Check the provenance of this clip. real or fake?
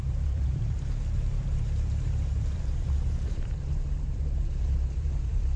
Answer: fake